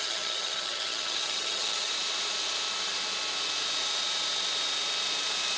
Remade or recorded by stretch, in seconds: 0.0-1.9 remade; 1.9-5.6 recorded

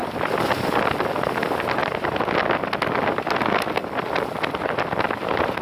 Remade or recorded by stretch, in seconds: 0.0-5.6 recorded

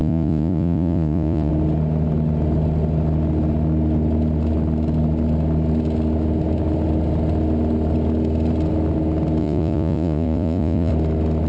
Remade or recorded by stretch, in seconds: 0.0-1.5 remade; 1.5-9.4 recorded; 9.4-10.9 remade; 10.9-11.5 recorded

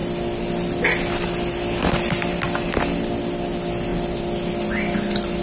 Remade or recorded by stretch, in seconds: 0.0-5.4 recorded

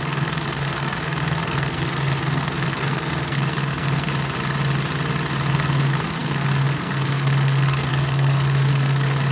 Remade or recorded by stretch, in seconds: 0.0-4.1 remade; 4.1-5.5 recorded; 5.5-9.3 remade

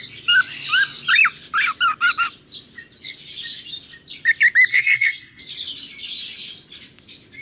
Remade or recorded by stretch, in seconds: 0.0-4.7 recorded; 4.7-5.4 remade; 5.4-7.4 recorded